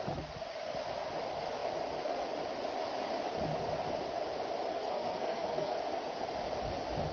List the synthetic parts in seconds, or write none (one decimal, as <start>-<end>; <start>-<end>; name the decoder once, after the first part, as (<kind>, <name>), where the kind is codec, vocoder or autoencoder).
4.7-5.8 (codec, SNAC)